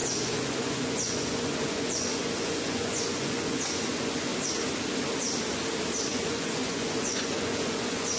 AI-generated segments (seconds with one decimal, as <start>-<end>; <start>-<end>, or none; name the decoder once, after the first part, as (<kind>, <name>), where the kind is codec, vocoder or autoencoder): 0.0-4.3 (vocoder, Vocos); 6.1-8.2